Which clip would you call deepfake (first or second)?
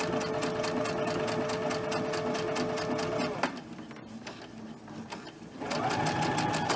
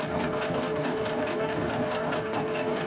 second